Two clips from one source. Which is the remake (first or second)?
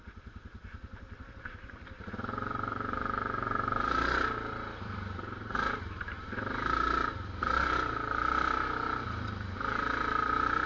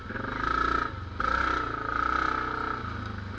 first